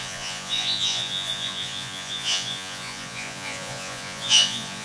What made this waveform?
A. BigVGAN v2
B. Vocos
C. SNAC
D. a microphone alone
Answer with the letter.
B